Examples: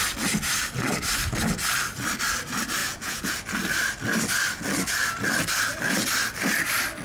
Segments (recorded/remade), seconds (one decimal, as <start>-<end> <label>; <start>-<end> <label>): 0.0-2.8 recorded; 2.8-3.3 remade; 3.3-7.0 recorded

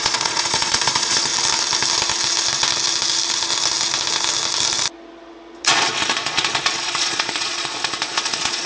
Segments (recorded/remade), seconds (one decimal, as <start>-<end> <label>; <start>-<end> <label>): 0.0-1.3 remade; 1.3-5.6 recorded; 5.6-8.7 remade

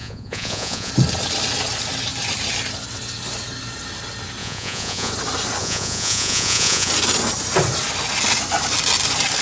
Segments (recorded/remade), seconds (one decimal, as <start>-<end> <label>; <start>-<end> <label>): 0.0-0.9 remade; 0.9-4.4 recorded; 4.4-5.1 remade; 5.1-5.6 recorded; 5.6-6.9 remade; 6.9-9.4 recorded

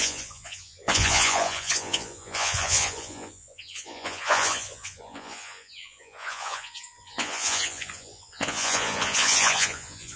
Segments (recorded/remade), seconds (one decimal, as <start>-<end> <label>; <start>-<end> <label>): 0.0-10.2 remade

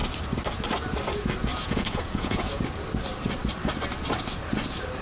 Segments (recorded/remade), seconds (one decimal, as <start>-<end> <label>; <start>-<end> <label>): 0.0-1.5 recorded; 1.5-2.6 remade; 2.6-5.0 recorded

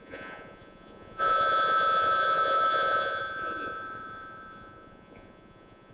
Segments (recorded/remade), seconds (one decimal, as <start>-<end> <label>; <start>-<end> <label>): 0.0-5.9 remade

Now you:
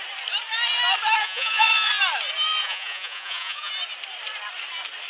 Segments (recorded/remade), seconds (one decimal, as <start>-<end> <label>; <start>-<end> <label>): 0.0-1.2 recorded; 1.2-2.0 remade; 2.0-2.6 recorded; 2.6-3.7 remade; 3.7-5.1 recorded